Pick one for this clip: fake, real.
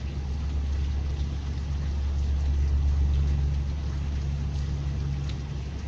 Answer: real